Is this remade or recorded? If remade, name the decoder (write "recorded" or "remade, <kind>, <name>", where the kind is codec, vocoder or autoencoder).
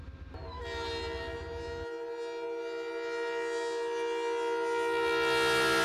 recorded